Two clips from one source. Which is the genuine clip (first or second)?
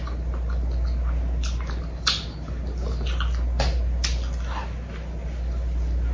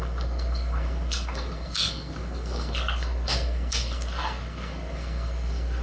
first